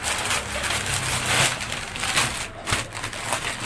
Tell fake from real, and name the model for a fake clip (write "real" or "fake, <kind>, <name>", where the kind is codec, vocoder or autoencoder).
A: real